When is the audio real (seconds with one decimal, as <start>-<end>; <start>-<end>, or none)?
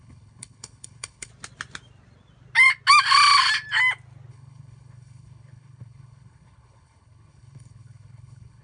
1.3-4.3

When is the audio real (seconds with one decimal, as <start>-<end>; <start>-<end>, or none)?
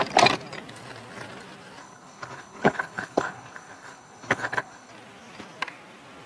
0.0-1.8; 4.9-6.3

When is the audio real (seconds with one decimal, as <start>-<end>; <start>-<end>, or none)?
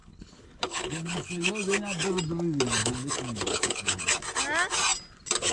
1.5-2.8; 4.0-5.5